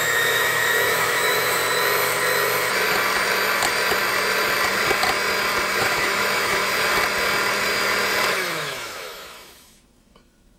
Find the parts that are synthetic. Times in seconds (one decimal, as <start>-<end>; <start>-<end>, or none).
0.0-1.6; 5.8-6.6; 8.3-10.6